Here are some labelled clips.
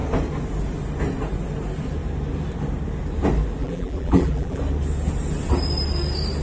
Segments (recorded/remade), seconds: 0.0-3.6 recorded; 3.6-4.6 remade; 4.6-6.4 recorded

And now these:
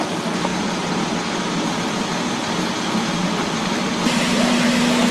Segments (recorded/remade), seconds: 0.0-3.2 recorded; 3.2-3.9 remade; 3.9-5.1 recorded

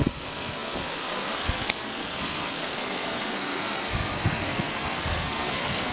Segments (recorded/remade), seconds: 0.0-5.9 remade

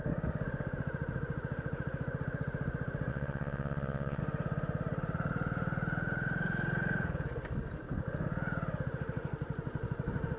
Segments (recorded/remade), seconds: 0.0-3.1 recorded; 3.1-4.2 remade; 4.2-10.4 recorded

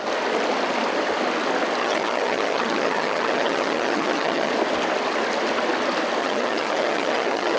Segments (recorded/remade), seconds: 0.0-1.8 recorded; 1.8-4.5 remade; 4.5-6.2 recorded; 6.2-7.6 remade

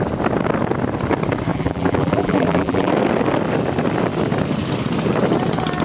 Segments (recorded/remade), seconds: 0.0-1.5 recorded; 1.5-2.9 remade; 2.9-5.8 recorded

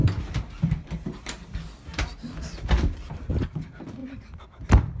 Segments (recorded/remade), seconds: 0.0-3.0 remade; 3.0-4.0 recorded; 4.0-5.0 remade